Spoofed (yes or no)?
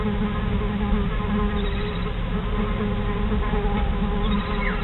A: no